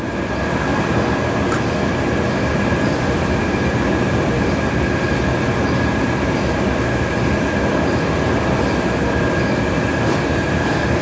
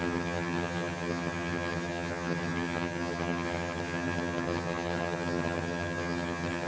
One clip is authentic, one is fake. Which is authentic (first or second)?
first